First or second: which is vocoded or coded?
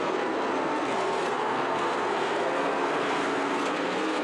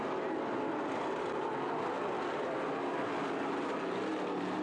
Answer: first